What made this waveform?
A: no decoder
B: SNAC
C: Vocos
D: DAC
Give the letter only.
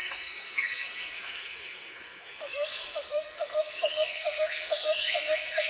B